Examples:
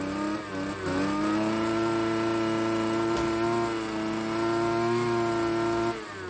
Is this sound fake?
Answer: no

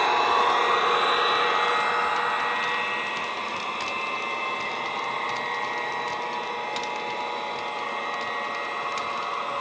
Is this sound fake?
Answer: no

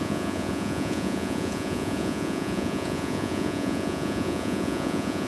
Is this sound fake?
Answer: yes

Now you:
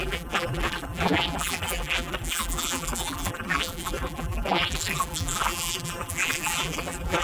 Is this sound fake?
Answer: yes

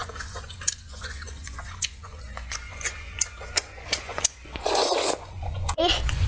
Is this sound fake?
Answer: yes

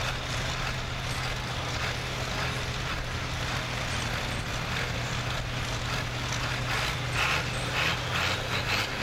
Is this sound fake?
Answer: no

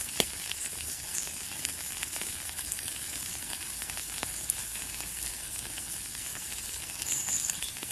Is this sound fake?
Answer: yes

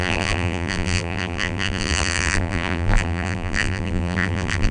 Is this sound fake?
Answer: yes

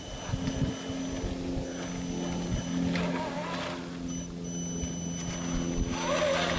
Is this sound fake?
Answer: no